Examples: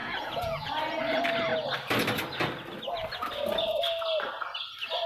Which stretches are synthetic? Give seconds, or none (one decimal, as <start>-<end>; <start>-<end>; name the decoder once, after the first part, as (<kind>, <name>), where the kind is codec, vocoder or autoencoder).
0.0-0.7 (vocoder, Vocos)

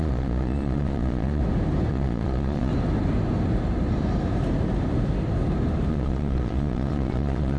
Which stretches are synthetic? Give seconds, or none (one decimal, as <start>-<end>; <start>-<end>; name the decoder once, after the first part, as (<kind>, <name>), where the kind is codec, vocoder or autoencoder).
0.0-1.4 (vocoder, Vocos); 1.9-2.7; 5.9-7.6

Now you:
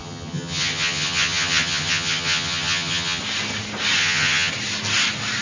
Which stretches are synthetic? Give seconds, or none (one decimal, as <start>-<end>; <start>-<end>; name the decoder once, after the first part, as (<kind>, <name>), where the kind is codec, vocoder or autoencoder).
0.0-3.2 (vocoder, HiFi-GAN); 4.0-4.5